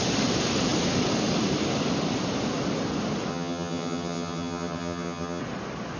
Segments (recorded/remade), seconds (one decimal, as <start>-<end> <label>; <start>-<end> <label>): 0.0-3.3 recorded; 3.3-5.4 remade; 5.4-6.0 recorded